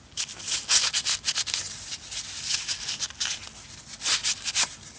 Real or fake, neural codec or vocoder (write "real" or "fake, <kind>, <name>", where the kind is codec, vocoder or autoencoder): real